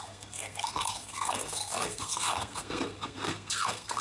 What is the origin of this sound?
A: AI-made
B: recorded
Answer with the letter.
A